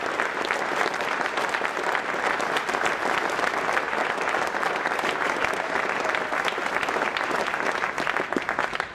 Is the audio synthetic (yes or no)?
no